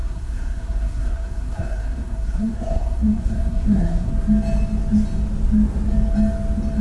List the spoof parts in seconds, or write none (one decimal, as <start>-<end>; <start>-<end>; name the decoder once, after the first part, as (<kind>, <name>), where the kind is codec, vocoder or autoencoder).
0.0-4.1 (codec, SNAC)